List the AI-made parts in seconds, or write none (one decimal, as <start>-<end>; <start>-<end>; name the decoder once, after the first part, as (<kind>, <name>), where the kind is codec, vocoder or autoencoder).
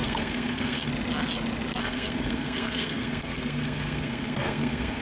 0.0-0.9 (codec, SNAC); 1.8-5.0